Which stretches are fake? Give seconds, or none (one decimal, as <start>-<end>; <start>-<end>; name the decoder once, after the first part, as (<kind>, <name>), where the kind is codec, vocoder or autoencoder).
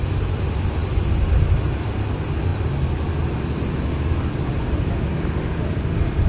none